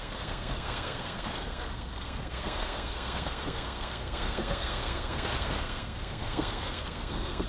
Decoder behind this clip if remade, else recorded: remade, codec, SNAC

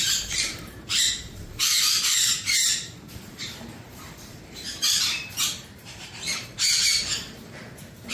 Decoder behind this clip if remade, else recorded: remade, vocoder, BigVGAN v2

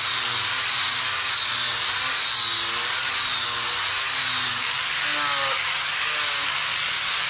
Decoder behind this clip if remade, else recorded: recorded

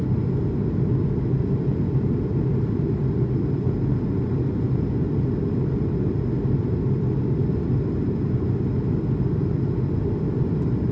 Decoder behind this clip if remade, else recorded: recorded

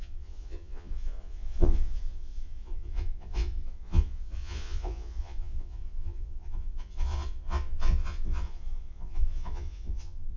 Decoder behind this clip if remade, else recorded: remade, vocoder, Vocos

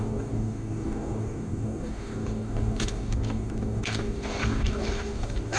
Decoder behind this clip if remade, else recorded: remade, codec, DAC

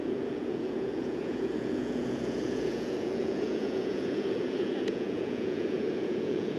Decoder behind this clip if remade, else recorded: remade, vocoder, Vocos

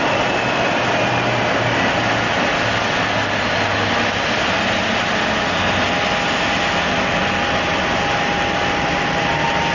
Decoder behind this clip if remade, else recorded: recorded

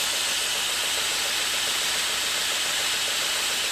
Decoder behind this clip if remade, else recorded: remade, vocoder, BigVGAN v2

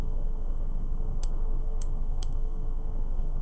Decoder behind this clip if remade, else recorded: remade, codec, SNAC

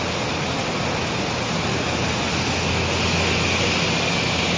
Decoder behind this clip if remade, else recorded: recorded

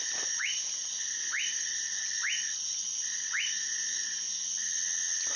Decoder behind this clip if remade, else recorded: recorded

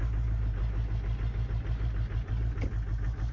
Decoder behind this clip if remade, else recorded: recorded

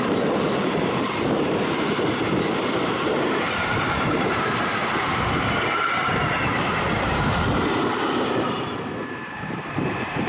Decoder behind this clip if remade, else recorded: remade, vocoder, BigVGAN v2